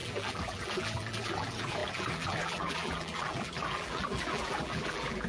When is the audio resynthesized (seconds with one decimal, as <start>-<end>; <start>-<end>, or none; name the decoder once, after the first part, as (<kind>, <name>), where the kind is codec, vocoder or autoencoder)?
0.0-5.3 (vocoder, BigVGAN v2)